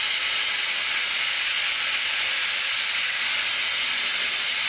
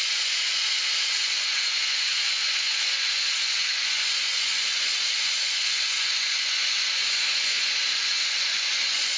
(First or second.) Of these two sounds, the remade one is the second